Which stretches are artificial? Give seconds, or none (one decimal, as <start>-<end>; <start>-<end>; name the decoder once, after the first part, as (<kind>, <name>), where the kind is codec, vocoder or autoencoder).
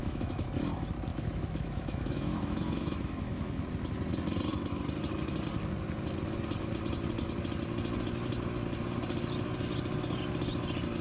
0.0-0.5 (autoencoder, DAC-VAE); 1.1-3.6